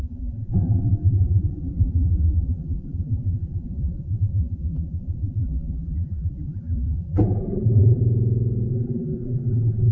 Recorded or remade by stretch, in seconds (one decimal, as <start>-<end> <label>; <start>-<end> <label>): 0.0-8.0 remade; 8.0-8.7 recorded; 8.7-9.9 remade